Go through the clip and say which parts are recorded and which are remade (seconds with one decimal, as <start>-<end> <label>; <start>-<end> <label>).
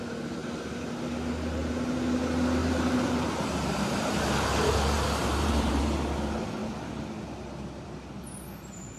0.0-0.4 recorded; 0.4-0.9 remade; 0.9-2.6 recorded; 2.6-5.8 remade; 5.8-9.0 recorded